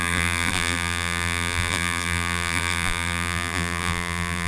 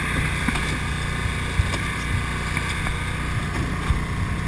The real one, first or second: second